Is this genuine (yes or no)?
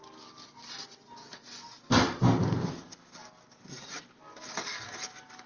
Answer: yes